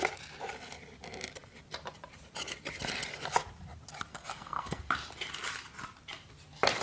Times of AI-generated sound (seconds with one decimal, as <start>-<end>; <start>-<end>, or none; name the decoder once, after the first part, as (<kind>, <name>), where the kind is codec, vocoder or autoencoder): 4.1-4.8 (codec, SNAC)